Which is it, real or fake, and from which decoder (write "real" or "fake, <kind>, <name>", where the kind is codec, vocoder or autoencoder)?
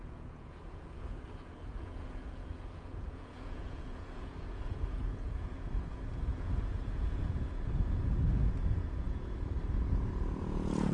fake, vocoder, Vocos